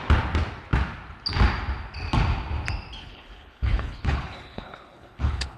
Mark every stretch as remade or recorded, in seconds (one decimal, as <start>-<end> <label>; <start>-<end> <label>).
0.0-3.0 recorded; 3.0-5.6 remade